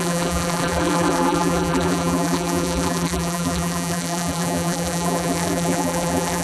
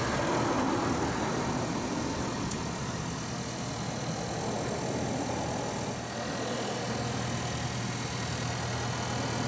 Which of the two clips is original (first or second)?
second